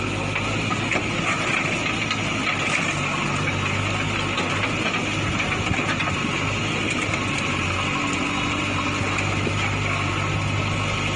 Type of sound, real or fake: real